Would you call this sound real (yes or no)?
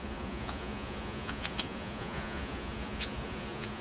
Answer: no